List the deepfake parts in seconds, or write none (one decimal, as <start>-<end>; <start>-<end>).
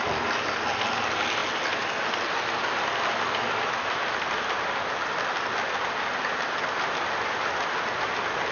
none